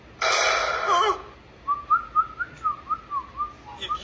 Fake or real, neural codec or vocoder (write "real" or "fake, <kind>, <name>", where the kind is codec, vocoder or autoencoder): real